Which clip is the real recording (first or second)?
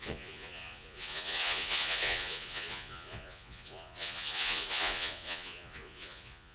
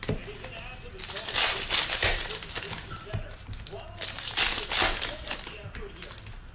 second